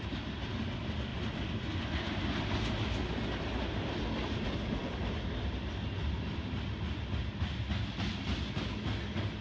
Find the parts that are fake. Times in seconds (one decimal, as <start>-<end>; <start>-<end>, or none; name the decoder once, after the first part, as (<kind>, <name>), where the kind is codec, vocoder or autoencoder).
none

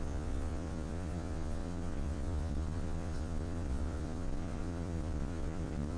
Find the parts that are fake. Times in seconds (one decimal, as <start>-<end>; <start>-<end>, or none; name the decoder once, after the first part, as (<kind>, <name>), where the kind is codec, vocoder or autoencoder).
0.0-6.0 (vocoder, Vocos)